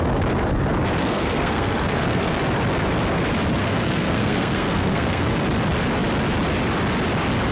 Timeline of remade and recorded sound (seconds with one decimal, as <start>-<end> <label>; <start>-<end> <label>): 0.0-1.0 recorded; 1.0-2.4 remade; 2.4-3.6 recorded; 3.6-5.4 remade; 5.4-7.5 recorded